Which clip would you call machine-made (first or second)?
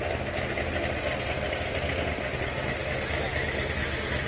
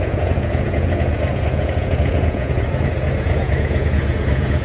second